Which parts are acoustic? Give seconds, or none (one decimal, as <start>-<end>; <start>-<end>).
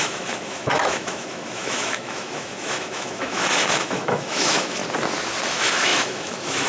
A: 4.8-5.5